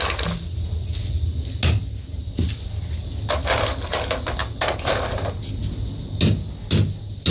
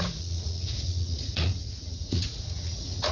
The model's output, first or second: second